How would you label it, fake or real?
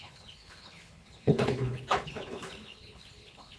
fake